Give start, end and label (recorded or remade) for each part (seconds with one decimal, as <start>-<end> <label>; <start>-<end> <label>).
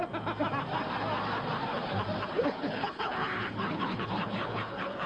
0.0-2.3 recorded; 2.3-5.1 remade